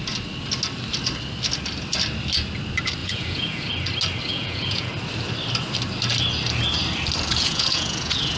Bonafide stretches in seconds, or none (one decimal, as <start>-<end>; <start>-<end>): 0.0-3.0; 3.7-4.3; 4.9-7.3